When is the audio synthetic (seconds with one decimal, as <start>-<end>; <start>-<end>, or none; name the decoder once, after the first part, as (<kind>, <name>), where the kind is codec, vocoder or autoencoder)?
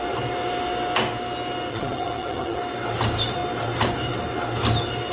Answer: 1.7-2.6 (vocoder, HiFi-GAN)